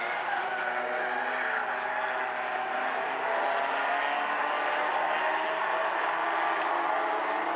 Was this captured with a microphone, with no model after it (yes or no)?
yes